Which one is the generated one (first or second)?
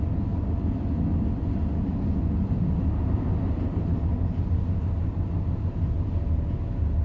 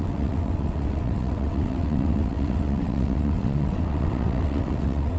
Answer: second